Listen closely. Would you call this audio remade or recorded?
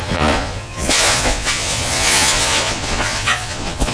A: remade